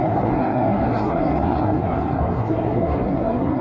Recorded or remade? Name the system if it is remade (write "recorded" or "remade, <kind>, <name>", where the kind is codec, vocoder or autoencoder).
remade, codec, SNAC